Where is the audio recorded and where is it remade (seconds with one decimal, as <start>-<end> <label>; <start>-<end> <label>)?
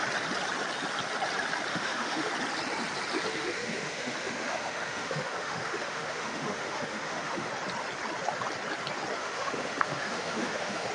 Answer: 0.0-1.7 recorded; 1.7-2.3 remade; 2.3-3.3 recorded; 3.3-7.5 remade; 7.5-9.2 recorded; 9.2-10.9 remade